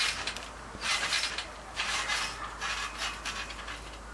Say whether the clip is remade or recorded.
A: recorded